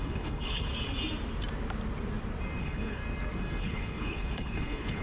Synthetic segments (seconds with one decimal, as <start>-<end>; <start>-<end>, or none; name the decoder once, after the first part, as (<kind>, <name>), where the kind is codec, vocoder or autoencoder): 0.0-0.7 (codec, HILCodec); 2.6-3.0; 3.6-5.0